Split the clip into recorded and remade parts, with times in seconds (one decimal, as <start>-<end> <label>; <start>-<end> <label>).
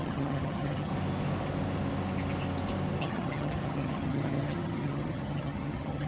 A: 0.0-0.9 remade; 0.9-3.0 recorded; 3.0-6.1 remade